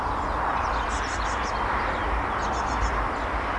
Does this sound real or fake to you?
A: real